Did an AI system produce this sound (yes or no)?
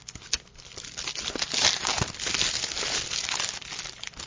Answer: no